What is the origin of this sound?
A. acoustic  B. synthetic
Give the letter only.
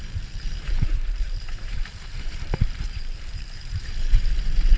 B